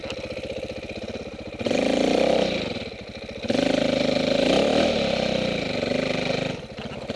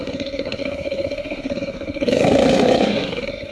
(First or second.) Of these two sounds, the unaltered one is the first